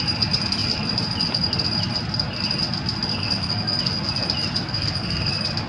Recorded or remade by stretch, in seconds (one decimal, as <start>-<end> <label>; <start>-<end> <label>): 0.0-3.1 recorded; 3.1-3.8 remade; 3.8-4.6 recorded; 4.6-5.3 remade; 5.3-5.7 recorded